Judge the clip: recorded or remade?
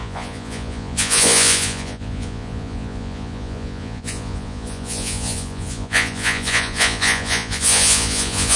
remade